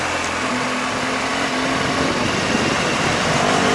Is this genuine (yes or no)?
yes